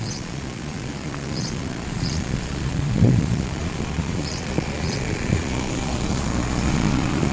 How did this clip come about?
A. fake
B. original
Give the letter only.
A